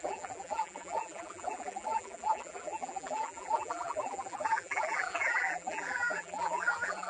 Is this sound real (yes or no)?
no